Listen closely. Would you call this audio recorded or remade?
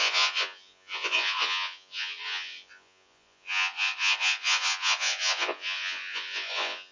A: remade